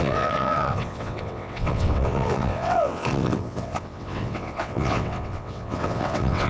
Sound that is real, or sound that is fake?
fake